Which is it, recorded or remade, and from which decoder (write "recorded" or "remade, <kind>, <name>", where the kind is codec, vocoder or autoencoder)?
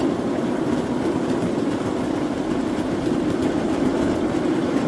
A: recorded